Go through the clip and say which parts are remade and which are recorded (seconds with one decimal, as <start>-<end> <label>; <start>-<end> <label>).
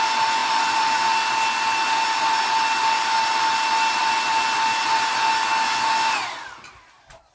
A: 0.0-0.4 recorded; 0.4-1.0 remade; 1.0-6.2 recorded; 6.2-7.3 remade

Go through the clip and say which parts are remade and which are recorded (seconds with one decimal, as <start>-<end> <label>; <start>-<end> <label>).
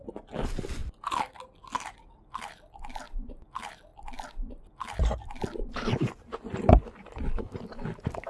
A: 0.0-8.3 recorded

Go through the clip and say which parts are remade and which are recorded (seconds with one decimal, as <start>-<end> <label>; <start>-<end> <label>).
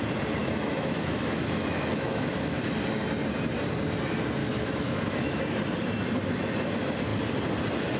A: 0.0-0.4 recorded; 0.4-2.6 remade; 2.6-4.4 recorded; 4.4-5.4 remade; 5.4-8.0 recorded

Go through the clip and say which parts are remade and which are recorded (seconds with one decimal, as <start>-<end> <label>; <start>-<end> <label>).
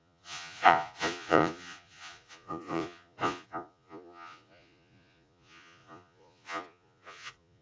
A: 0.0-7.6 remade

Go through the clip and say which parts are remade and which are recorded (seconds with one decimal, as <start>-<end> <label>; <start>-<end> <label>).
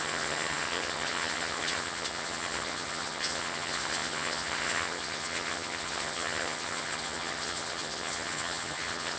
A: 0.0-9.2 remade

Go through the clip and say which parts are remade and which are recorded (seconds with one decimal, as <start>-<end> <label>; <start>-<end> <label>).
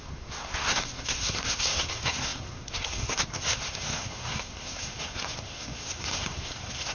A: 0.0-6.9 remade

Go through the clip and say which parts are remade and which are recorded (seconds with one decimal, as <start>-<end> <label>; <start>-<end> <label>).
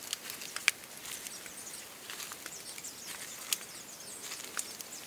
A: 0.0-5.1 recorded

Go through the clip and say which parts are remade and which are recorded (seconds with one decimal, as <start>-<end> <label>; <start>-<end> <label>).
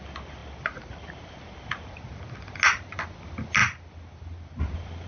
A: 0.0-5.1 recorded